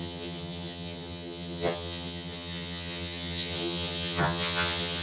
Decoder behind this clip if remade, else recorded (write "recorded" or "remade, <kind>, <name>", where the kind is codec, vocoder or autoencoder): remade, vocoder, HiFi-GAN